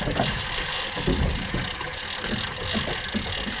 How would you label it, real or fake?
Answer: real